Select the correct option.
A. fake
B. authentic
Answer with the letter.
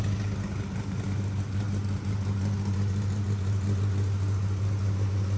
B